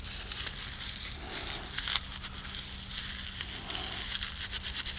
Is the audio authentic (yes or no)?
yes